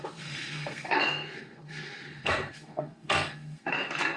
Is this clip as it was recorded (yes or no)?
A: no